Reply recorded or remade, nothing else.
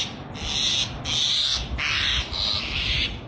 recorded